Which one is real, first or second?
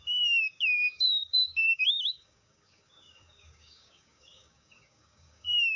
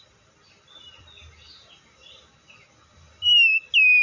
second